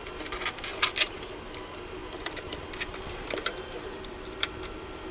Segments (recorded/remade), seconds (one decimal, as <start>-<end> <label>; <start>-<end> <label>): 0.0-0.7 recorded; 0.7-1.3 remade; 1.3-2.0 recorded; 2.0-5.1 remade